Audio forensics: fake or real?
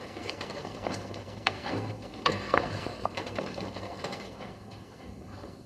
fake